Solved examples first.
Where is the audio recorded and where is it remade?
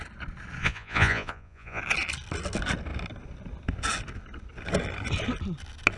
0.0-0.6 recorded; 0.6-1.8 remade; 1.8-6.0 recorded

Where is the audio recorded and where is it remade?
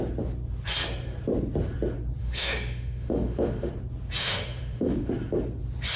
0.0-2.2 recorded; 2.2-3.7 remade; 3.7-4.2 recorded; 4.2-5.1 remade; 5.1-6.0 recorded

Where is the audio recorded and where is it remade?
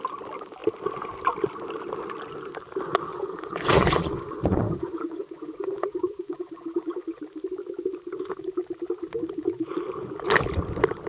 0.0-3.1 recorded; 3.1-7.2 remade; 7.2-11.1 recorded